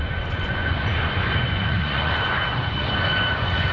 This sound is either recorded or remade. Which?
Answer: remade